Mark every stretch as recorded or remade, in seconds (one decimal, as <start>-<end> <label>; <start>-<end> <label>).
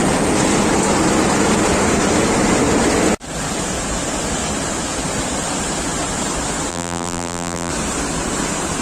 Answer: 0.0-6.7 recorded; 6.7-7.7 remade; 7.7-8.8 recorded